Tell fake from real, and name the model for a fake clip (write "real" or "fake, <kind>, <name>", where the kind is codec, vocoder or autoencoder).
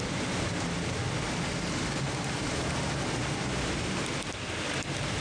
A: real